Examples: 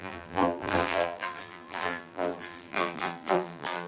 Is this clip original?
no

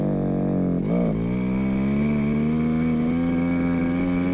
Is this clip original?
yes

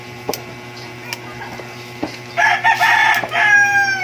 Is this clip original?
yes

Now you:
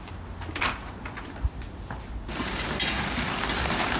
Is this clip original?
yes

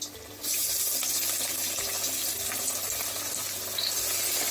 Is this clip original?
yes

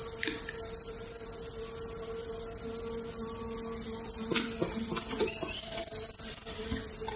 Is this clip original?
yes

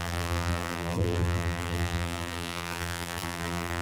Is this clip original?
no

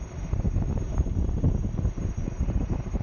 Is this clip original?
no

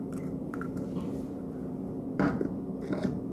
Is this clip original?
no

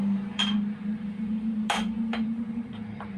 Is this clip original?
no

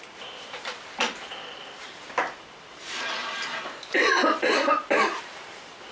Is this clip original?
no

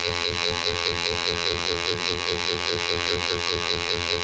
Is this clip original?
no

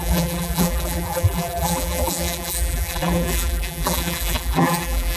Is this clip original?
no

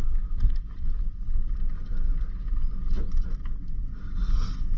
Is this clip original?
yes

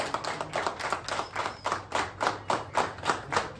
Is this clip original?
yes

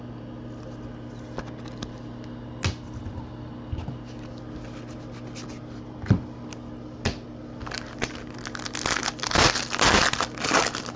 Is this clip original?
yes